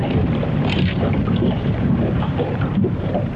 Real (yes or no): no